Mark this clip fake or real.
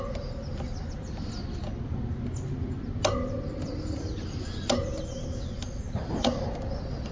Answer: real